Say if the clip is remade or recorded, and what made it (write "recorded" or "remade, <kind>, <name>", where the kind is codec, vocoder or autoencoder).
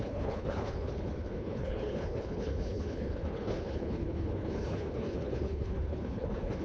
remade, codec, HILCodec